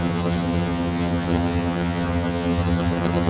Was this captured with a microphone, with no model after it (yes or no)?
no